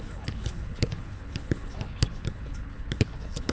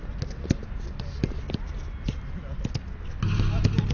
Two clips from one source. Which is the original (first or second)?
second